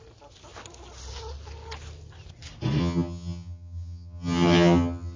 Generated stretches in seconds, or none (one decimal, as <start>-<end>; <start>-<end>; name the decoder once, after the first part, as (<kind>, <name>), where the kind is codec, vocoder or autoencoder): 2.8-5.2 (vocoder, HiFi-GAN)

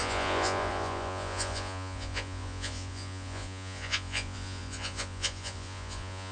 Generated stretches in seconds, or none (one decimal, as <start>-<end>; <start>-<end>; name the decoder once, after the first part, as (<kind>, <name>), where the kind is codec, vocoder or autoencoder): 0.0-6.3 (vocoder, Vocos)

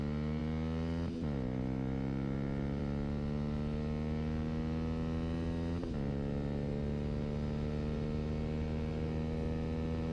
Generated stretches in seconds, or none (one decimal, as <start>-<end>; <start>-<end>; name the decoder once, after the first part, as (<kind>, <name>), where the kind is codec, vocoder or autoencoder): none

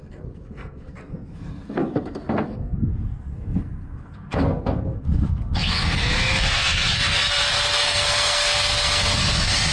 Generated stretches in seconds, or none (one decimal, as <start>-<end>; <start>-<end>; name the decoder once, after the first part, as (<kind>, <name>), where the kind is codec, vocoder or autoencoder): 0.0-9.7 (codec, SNAC)